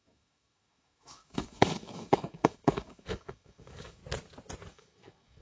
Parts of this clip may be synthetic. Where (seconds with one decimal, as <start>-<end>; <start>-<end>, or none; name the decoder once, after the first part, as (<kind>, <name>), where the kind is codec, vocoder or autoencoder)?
0.0-4.0 (autoencoder, DAC-VAE); 4.7-5.4

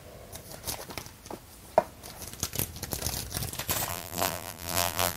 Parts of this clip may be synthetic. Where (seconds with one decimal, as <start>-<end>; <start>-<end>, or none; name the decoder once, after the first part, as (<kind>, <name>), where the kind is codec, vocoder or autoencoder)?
3.9-5.2 (vocoder, BigVGAN v2)

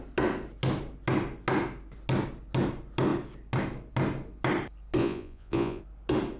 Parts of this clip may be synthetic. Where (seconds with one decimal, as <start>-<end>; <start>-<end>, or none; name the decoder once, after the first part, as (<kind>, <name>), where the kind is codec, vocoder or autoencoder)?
5.0-5.8 (vocoder, Vocos)

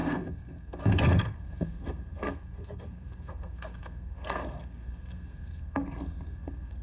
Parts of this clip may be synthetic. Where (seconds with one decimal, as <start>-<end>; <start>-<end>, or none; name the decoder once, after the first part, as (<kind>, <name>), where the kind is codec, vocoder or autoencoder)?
0.0-6.8 (codec, SNAC)

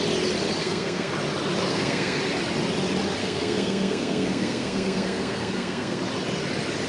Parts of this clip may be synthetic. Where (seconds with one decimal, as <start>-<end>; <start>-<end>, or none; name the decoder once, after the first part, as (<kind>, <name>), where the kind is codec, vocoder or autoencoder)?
0.6-1.1 (codec, SNAC); 1.7-2.2; 3.2-6.0

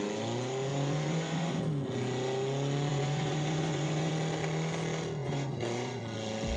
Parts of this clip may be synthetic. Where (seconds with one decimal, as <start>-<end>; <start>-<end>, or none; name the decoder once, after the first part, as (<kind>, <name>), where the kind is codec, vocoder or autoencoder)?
0.7-1.6 (vocoder, Vocos); 2.9-4.1; 5.2-6.0